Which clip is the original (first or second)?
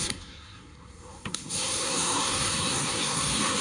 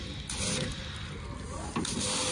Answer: second